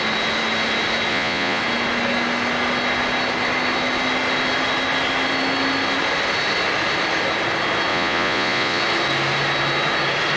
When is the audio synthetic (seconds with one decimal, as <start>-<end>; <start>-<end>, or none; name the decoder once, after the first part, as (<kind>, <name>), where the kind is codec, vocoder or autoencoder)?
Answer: 1.1-1.6 (vocoder, Vocos); 7.9-8.8